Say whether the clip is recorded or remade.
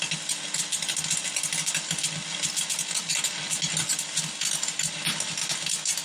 recorded